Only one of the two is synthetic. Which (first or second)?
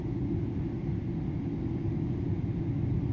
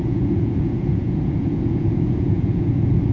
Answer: second